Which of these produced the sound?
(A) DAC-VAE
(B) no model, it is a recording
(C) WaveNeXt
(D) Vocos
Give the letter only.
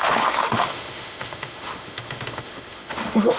A